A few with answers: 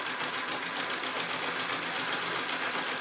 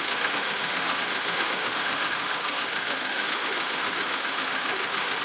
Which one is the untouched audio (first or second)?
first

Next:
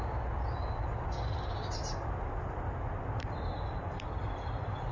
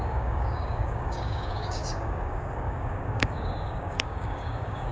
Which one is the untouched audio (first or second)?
first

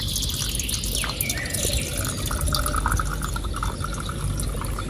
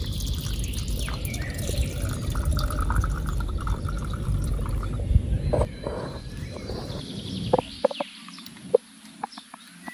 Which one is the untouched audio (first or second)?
first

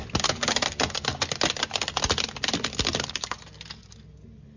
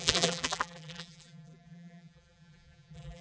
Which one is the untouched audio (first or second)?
first